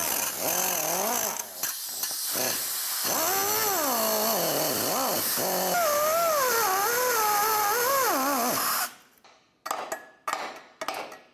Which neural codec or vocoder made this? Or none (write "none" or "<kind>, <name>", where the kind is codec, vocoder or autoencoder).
none